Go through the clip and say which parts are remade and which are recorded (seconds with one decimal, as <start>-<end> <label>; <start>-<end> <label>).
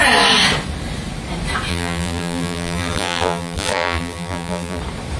0.0-1.7 recorded; 1.7-4.8 remade; 4.8-5.2 recorded